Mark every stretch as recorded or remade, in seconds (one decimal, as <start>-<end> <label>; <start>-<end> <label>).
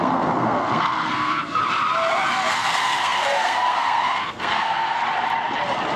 0.0-1.6 remade; 1.6-2.3 recorded; 2.3-5.0 remade; 5.0-6.0 recorded